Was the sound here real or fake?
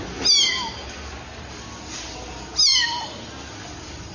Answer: real